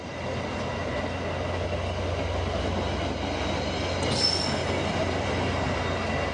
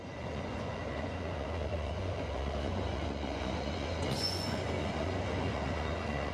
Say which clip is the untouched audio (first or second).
first